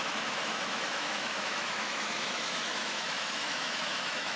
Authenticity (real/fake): fake